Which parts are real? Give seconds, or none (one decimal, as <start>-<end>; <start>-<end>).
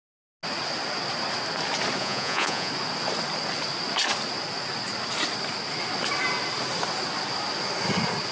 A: 0.0-2.0; 2.7-8.3